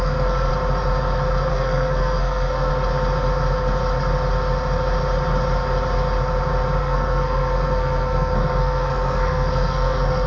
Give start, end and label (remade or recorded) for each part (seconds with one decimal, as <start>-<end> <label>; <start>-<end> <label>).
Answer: 0.0-0.5 remade; 0.5-1.5 recorded; 1.5-2.7 remade; 2.7-6.8 recorded; 6.8-10.3 remade